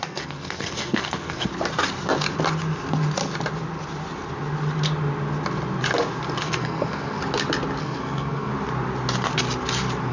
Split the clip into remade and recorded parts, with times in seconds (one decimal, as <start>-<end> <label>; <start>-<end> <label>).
0.0-1.5 remade; 1.5-6.4 recorded; 6.4-7.2 remade; 7.2-7.8 recorded; 7.8-8.5 remade; 8.5-10.1 recorded